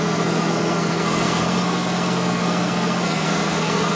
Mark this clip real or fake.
fake